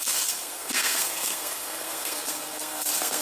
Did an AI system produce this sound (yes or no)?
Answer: yes